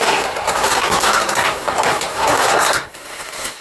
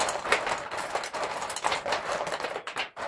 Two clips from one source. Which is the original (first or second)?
second